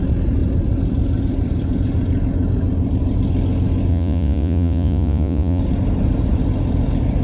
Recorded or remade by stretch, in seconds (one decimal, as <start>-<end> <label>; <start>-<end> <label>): 0.0-3.9 recorded; 3.9-5.6 remade; 5.6-7.2 recorded